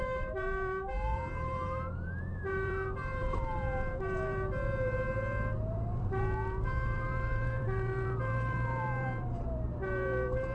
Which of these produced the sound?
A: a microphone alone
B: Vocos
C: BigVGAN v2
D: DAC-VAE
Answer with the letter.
C